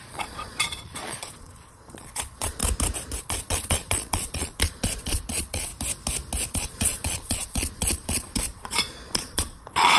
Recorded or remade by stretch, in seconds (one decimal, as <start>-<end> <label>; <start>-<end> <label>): 0.0-2.6 remade; 2.6-3.2 recorded; 3.2-5.7 remade; 5.7-6.5 recorded; 6.5-10.0 remade